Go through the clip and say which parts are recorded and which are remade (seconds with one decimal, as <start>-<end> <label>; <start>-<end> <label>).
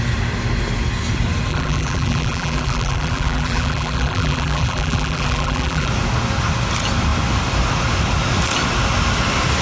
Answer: 0.0-1.5 recorded; 1.5-5.9 remade; 5.9-9.6 recorded